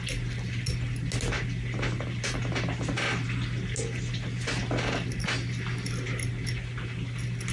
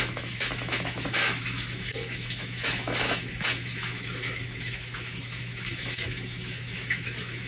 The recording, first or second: first